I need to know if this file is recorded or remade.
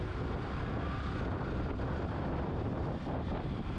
remade